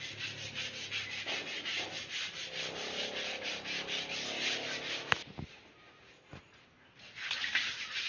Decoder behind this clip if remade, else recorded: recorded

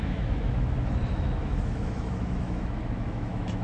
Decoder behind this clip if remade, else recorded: remade, autoencoder, DAC-VAE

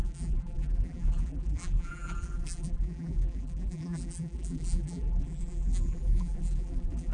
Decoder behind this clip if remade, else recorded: remade, vocoder, BigVGAN v2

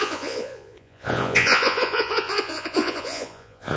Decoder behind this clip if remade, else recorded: remade, vocoder, Vocos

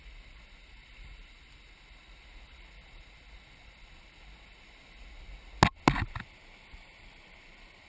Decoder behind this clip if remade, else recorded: recorded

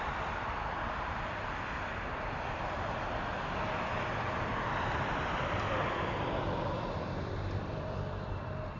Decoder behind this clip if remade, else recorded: remade, vocoder, BigVGAN v2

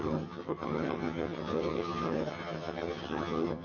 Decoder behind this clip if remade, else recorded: remade, vocoder, HiFi-GAN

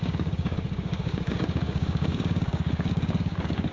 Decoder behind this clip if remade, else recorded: remade, codec, DAC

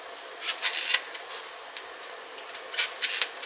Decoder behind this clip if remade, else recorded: recorded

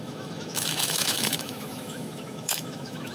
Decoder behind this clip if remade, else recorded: remade, autoencoder, DAC-VAE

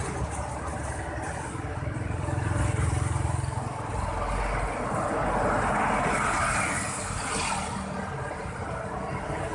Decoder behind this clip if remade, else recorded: recorded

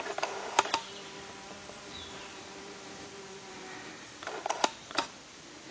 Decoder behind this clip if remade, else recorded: recorded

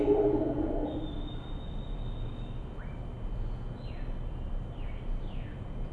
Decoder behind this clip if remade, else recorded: recorded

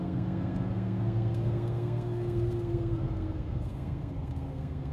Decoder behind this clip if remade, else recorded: remade, codec, SNAC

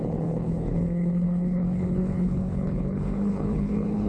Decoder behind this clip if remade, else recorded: remade, codec, HILCodec